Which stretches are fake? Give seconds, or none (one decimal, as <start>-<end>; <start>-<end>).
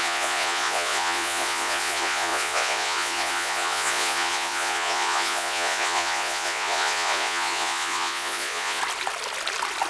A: 0.0-8.8